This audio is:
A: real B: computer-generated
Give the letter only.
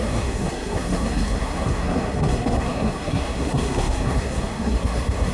B